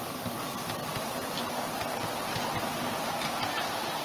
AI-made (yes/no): no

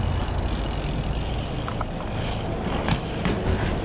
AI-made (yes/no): no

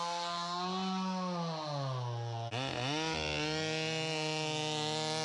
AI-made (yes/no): no